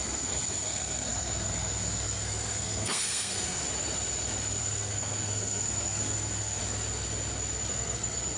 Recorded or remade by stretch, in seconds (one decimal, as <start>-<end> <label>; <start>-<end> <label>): 0.0-3.6 remade; 3.6-4.6 recorded; 4.6-6.6 remade; 6.6-7.7 recorded; 7.7-8.4 remade